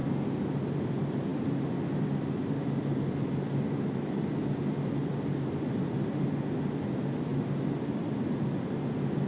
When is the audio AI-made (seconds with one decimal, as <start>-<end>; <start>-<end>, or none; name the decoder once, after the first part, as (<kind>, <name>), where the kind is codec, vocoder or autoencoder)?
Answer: none